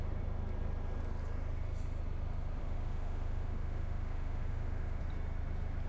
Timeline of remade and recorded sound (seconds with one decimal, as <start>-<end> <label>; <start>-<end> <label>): 0.0-2.6 recorded; 2.6-5.0 remade; 5.0-5.9 recorded